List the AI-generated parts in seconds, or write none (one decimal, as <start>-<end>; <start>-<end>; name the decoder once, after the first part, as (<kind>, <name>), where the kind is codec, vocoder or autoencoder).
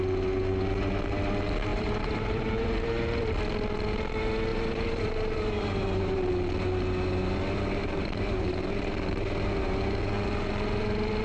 1.7-2.9 (vocoder, BigVGAN v2); 4.5-6.3; 7.8-11.2